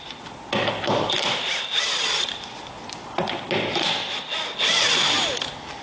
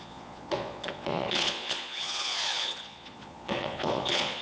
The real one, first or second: first